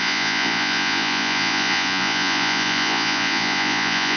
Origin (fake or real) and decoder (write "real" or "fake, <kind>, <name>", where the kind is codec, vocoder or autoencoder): fake, vocoder, Vocos